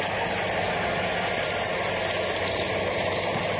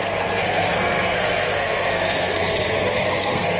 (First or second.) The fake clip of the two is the second